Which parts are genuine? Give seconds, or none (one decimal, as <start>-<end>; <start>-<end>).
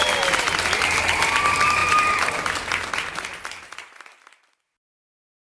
0.0-5.6